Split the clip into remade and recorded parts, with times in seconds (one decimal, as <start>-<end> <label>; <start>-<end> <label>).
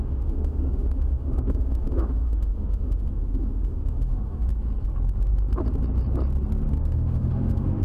0.0-4.5 remade; 4.5-6.7 recorded; 6.7-7.8 remade